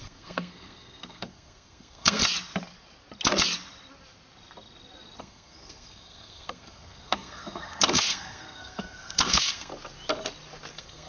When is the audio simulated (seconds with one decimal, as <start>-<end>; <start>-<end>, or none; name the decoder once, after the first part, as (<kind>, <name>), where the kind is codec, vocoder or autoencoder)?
0.0-2.2 (codec, SNAC); 5.2-9.7; 10.7-11.1